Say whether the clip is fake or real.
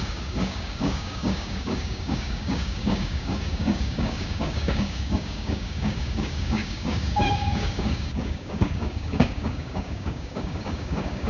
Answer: fake